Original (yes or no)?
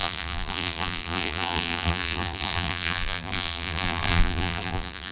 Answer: no